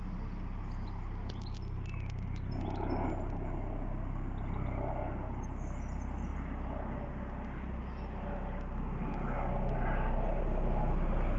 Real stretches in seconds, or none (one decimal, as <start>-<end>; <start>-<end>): 0.0-11.4